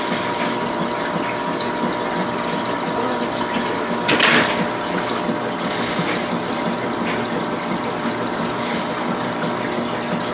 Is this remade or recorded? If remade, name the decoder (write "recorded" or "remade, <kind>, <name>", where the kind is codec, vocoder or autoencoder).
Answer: recorded